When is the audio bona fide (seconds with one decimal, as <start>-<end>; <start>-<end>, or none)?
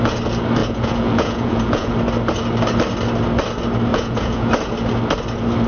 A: 0.0-0.6; 1.9-3.9; 4.5-5.7